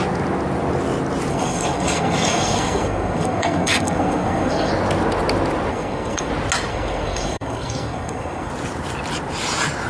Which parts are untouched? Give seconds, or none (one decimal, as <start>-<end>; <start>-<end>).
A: 0.0-1.3; 4.7-5.7; 6.3-6.7; 8.5-9.9